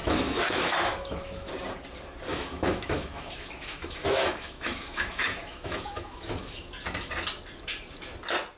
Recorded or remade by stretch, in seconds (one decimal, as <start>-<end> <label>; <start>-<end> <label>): 0.0-1.5 remade; 1.5-2.3 recorded; 2.3-6.7 remade; 6.7-8.6 recorded